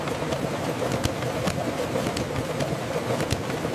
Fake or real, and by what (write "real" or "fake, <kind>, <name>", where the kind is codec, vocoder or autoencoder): real